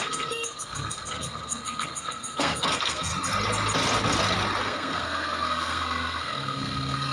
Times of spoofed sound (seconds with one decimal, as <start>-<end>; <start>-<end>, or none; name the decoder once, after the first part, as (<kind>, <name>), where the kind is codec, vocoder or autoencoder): 0.0-3.1 (codec, SNAC); 4.6-7.1